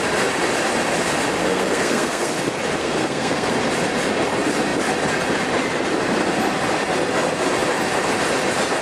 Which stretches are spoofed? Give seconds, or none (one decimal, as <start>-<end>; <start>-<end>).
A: 1.4-2.3; 2.8-3.5

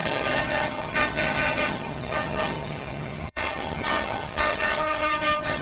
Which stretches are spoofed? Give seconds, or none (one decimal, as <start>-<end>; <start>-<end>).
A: 0.0-5.6

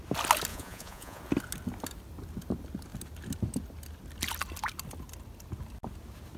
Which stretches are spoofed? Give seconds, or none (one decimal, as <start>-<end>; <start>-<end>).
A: 0.5-1.2